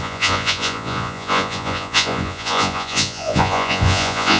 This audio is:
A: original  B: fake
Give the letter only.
B